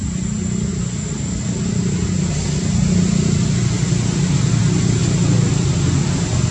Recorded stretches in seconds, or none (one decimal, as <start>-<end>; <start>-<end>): 0.0-6.5